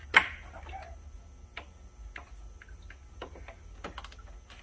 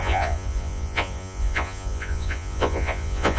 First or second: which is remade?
second